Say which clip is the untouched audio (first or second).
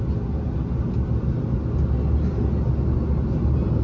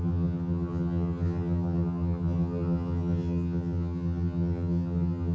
first